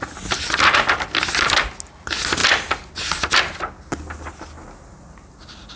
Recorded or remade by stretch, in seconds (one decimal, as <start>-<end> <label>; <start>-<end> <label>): 0.0-5.8 recorded